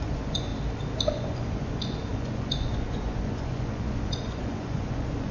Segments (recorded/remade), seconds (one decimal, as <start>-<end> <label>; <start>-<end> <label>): 0.0-0.5 remade; 0.5-1.1 recorded; 1.1-5.3 remade